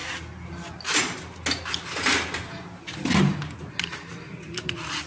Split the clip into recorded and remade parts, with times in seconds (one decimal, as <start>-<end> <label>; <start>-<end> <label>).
0.0-5.1 recorded